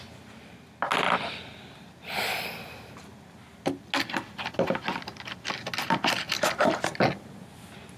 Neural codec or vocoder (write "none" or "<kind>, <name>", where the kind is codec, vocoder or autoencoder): none